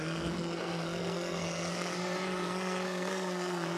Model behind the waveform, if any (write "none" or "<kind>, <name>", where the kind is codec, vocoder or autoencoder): codec, SNAC